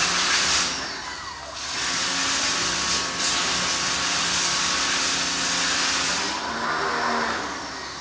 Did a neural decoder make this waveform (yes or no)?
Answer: no